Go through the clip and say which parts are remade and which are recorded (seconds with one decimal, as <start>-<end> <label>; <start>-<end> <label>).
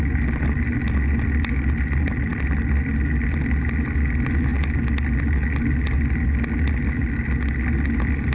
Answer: 0.0-8.3 recorded